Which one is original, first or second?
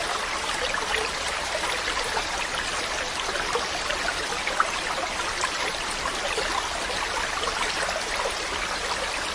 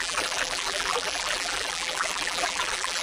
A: first